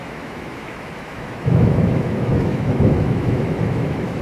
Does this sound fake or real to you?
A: fake